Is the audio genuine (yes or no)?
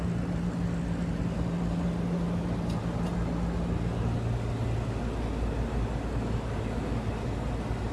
yes